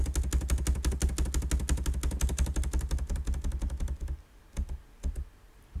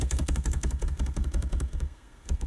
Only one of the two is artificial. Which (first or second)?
second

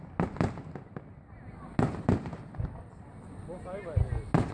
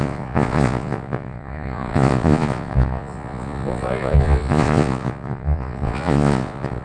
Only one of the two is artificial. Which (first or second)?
second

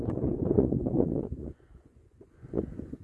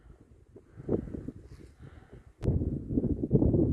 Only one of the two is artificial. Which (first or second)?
first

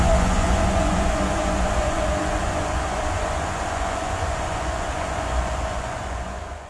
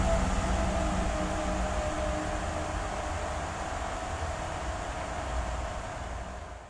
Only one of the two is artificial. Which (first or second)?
first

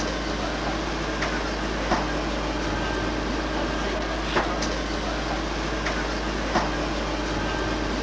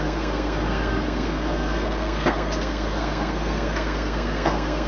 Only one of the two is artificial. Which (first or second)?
second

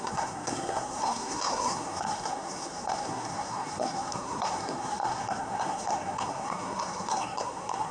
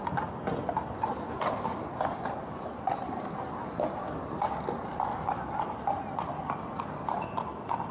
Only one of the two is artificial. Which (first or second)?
first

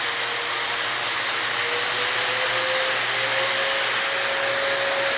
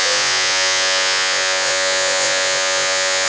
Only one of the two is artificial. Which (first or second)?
second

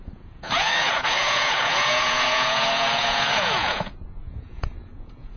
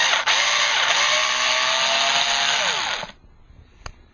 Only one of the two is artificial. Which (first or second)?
first